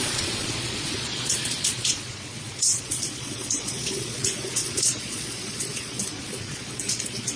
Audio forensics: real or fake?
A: fake